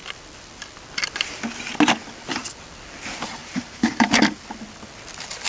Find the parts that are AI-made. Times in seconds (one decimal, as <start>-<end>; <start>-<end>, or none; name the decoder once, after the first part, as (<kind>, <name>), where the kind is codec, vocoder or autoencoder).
3.4-4.1 (vocoder, BigVGAN v2)